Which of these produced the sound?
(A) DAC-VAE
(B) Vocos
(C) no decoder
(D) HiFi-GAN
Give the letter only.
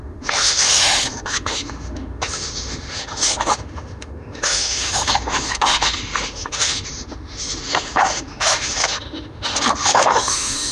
A